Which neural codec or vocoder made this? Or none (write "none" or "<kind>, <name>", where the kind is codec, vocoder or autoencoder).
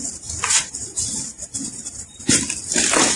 none